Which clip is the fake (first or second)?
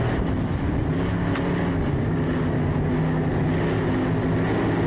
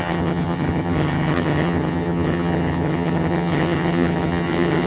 second